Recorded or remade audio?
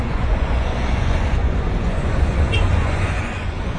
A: remade